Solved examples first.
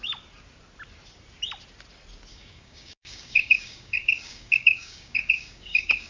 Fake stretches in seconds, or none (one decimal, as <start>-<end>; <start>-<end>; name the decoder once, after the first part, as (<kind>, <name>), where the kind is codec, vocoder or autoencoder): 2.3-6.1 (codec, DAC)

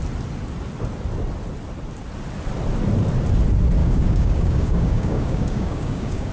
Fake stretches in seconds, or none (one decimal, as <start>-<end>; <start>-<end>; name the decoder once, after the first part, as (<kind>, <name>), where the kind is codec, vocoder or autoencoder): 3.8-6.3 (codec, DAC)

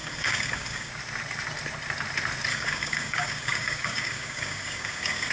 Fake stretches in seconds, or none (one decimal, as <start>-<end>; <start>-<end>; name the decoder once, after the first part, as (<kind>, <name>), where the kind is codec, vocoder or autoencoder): 0.0-0.9 (codec, DAC); 2.5-5.3

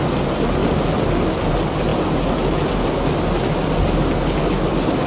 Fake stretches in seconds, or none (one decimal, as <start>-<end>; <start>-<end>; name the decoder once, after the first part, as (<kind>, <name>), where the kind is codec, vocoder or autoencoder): none

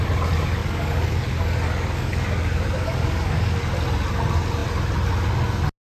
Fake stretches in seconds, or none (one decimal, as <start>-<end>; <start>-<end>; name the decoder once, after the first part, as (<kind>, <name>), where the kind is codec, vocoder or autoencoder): 0.6-3.6 (codec, DAC)

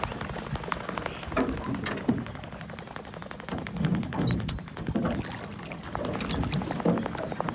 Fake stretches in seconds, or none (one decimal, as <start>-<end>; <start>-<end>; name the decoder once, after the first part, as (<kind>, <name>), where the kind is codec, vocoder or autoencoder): none